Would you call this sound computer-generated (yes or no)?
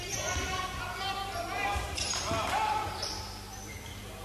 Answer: no